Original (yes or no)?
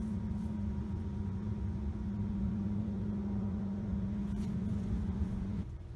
no